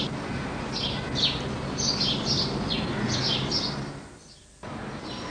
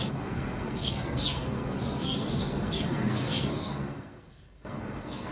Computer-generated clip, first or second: second